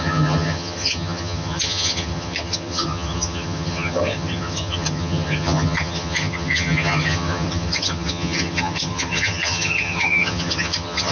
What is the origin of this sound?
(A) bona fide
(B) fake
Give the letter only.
B